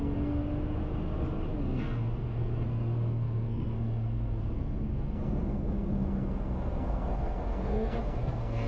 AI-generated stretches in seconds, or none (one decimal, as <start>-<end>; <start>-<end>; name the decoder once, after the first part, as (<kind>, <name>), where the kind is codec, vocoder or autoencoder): 0.0-0.4 (codec, SNAC); 1.6-8.7